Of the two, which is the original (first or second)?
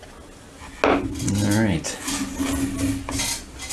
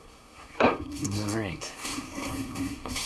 first